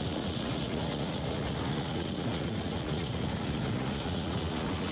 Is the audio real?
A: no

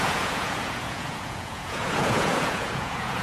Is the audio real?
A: no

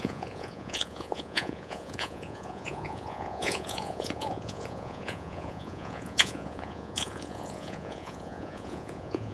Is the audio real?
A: no